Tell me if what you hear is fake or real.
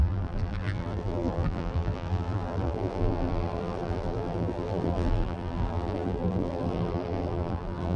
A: fake